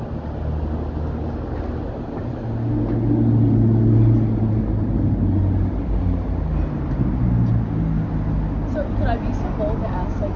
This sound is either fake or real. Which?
real